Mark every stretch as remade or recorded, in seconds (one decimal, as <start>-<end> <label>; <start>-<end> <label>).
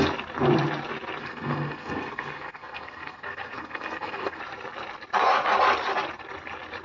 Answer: 0.0-1.2 recorded; 1.2-4.4 remade; 4.4-6.8 recorded